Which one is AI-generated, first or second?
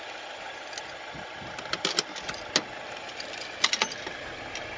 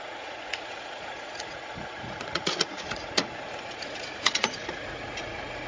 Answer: second